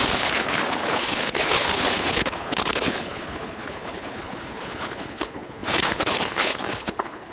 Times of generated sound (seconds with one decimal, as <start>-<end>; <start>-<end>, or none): 0.0-7.3